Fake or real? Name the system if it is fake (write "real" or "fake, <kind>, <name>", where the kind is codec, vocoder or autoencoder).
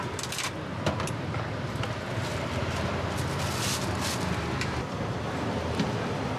real